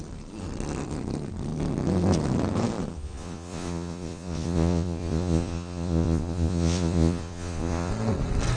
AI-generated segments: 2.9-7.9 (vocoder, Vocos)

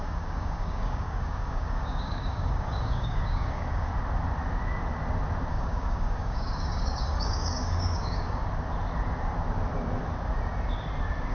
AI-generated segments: 0.0-3.9 (codec, DAC); 5.5-8.4

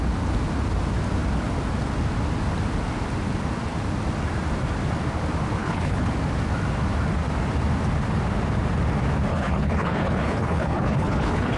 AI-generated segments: 5.6-6.1 (codec, HILCodec); 9.3-11.6

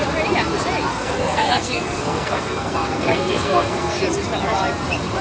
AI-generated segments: 0.9-4.0 (codec, SNAC)

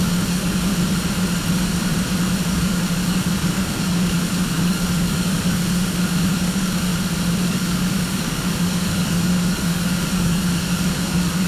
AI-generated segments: 0.0-0.7 (codec, DAC); 1.5-1.9; 2.5-6.9; 7.4-11.5